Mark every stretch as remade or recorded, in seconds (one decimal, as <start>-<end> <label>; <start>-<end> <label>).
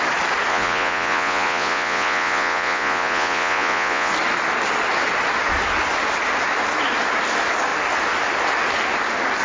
0.0-0.5 recorded; 0.5-4.1 remade; 4.1-9.4 recorded